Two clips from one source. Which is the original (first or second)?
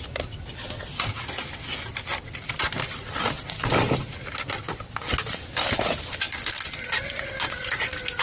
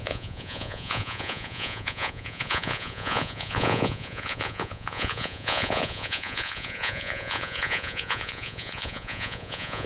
first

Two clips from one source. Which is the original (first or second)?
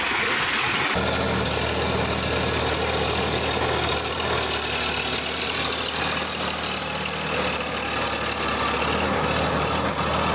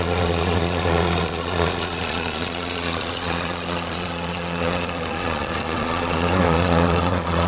first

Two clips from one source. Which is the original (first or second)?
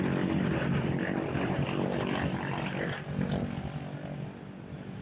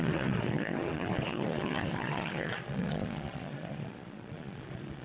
first